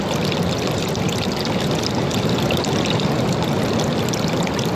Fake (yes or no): no